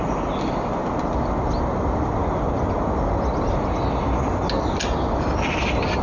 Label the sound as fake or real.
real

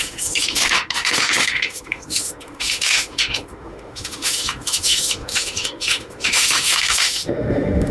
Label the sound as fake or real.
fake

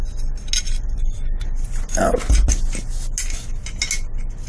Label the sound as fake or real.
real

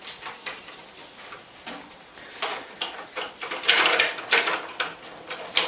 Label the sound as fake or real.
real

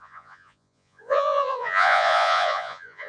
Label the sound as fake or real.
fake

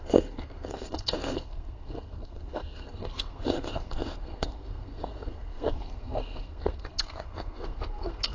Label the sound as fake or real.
fake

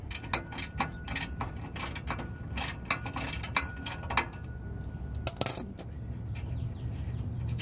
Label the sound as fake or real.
real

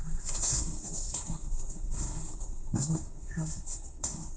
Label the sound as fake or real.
fake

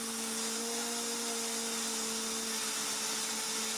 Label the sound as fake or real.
real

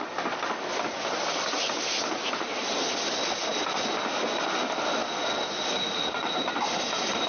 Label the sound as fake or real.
real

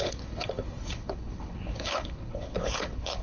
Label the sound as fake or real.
fake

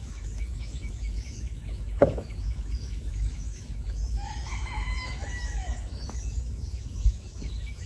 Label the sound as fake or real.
fake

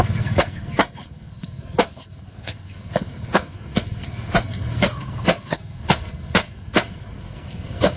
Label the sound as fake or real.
fake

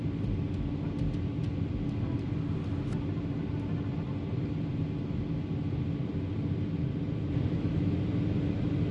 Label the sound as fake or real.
real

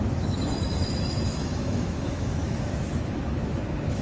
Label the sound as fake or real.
fake